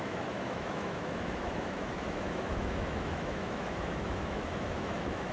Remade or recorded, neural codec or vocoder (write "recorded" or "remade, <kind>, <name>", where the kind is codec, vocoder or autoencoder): remade, autoencoder, DAC-VAE